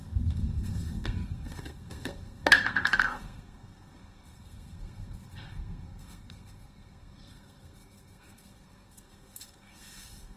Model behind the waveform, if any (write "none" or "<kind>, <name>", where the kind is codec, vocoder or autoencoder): codec, SNAC